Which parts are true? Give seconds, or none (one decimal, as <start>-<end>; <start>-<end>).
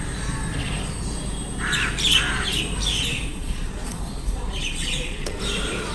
0.0-3.3; 5.4-5.9